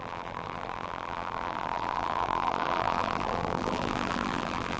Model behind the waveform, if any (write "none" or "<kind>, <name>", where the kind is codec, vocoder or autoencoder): vocoder, BigVGAN v2